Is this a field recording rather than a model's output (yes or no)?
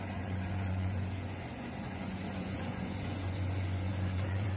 no